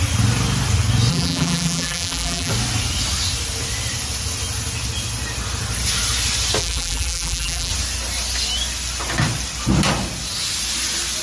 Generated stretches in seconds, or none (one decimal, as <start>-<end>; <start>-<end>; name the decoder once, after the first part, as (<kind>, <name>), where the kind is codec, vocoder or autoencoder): 1.1-2.5 (vocoder, BigVGAN v2); 6.6-7.7